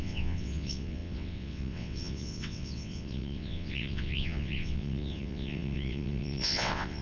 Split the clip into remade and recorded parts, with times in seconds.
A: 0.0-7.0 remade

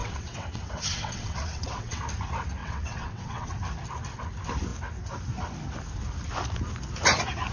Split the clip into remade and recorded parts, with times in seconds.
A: 0.0-2.0 remade; 2.0-2.6 recorded; 2.6-3.5 remade; 3.5-7.5 recorded

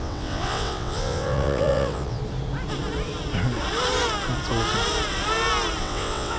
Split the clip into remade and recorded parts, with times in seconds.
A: 0.0-2.2 remade; 2.2-5.8 recorded; 5.8-6.4 remade

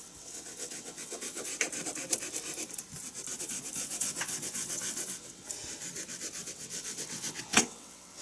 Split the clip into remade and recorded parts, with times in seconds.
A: 0.0-1.5 remade; 1.5-3.4 recorded; 3.4-5.5 remade; 5.5-6.4 recorded; 6.4-8.2 remade

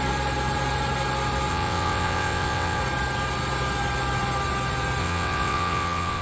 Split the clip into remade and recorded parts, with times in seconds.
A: 0.0-1.5 recorded; 1.5-2.8 remade; 2.8-5.0 recorded; 5.0-6.2 remade

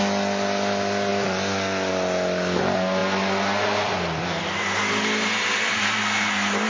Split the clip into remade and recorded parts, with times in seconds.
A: 0.0-6.7 recorded

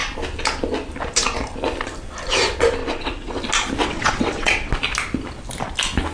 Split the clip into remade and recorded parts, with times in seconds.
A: 0.0-2.8 recorded; 2.8-3.4 remade; 3.4-3.8 recorded; 3.8-4.7 remade; 4.7-6.1 recorded